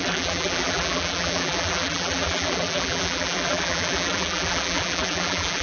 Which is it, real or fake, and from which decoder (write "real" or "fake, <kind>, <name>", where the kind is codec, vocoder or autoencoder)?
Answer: fake, vocoder, BigVGAN v2